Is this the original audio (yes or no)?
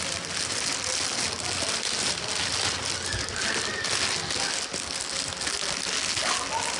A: yes